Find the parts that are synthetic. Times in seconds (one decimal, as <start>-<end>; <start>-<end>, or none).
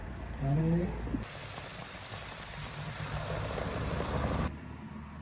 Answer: 0.0-0.6; 1.4-4.5